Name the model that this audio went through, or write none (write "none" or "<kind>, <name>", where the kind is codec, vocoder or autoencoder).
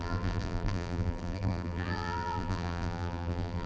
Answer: vocoder, BigVGAN v2